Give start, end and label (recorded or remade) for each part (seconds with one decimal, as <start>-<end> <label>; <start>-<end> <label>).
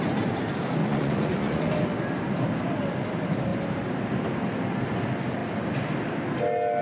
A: 0.0-0.8 recorded; 0.8-1.7 remade; 1.7-6.8 recorded